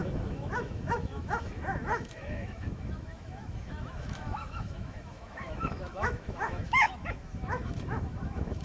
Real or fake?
fake